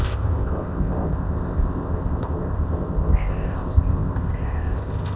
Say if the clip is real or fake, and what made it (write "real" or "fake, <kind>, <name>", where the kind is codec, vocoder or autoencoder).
fake, codec, ZipCodec